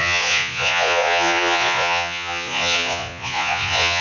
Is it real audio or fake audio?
fake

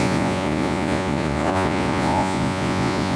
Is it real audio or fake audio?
fake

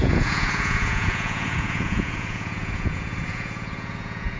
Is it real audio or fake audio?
fake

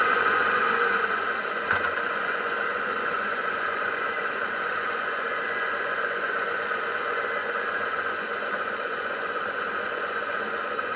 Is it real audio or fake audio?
fake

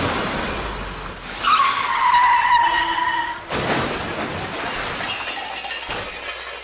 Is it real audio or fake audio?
real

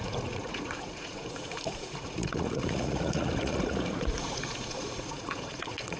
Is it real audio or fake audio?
fake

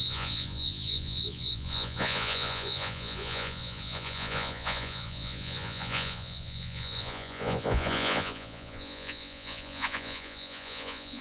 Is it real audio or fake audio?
fake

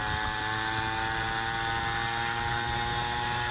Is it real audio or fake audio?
real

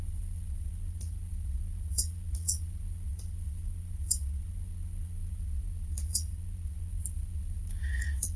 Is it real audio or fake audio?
fake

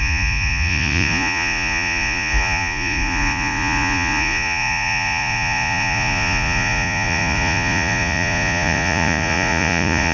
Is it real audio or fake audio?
fake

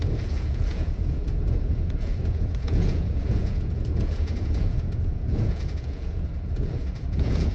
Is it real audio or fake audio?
fake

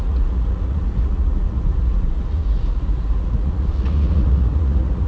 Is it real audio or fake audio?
fake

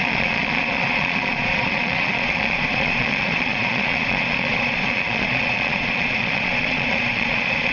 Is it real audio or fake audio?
fake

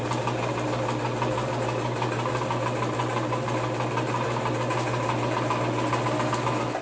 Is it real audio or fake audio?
real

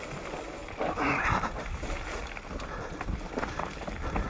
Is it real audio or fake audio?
real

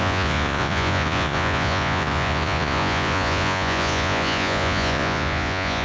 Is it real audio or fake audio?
fake